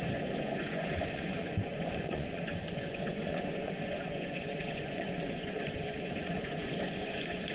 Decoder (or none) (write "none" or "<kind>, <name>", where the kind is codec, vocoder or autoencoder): vocoder, Vocos